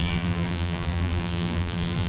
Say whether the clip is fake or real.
fake